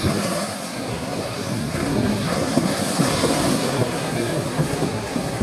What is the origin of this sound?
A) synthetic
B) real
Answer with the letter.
A